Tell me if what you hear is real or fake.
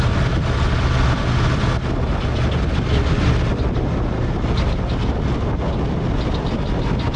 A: real